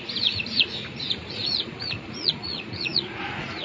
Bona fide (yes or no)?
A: no